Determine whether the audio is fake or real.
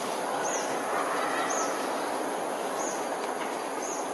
real